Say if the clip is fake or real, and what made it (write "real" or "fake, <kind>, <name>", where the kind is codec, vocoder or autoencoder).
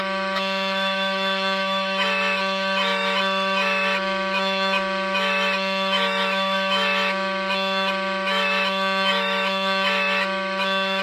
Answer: fake, autoencoder, DAC-VAE